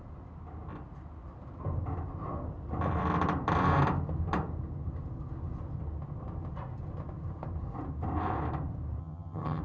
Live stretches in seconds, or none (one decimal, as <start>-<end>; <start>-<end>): 0.0-9.0